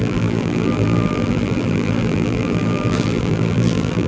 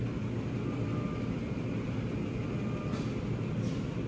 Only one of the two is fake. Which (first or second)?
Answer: first